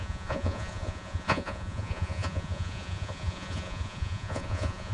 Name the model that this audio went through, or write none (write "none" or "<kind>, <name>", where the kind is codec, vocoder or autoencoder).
vocoder, Vocos